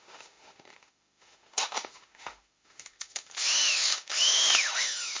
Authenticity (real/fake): fake